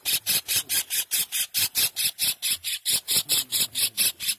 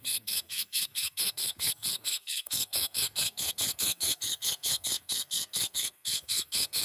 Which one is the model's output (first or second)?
second